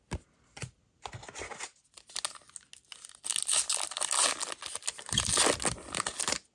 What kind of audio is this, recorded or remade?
recorded